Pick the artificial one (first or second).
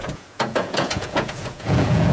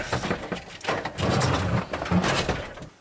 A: first